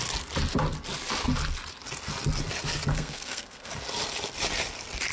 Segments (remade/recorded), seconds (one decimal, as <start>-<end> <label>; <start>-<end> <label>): 0.0-2.9 recorded; 2.9-3.7 remade; 3.7-5.1 recorded